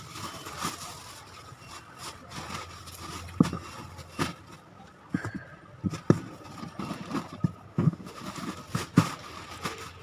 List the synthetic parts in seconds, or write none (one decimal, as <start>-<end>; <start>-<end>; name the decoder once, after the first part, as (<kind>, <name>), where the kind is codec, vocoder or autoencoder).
7.7-8.2 (autoencoder, DAC-VAE)